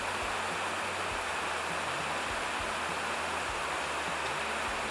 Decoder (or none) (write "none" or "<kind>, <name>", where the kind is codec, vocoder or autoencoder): none